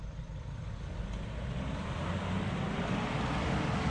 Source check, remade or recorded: recorded